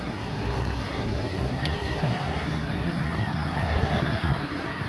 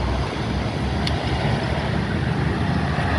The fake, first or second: first